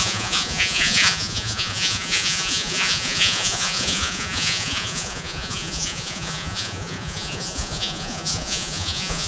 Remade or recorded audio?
remade